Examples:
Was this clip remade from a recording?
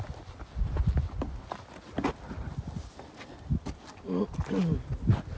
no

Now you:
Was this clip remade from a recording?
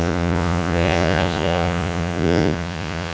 yes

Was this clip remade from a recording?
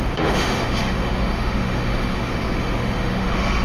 yes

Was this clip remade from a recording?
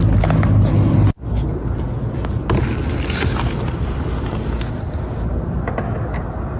no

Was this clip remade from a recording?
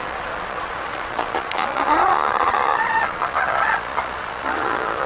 yes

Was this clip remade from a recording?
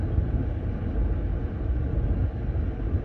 no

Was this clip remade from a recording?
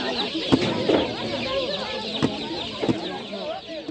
no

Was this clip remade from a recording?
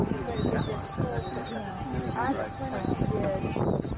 no